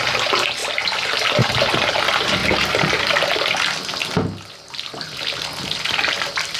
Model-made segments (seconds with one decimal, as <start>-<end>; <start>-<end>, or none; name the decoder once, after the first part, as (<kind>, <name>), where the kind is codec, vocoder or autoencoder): 2.4-3.0 (vocoder, BigVGAN v2)